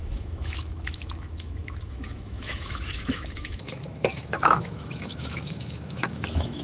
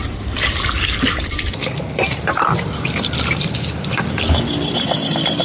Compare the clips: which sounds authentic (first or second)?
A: second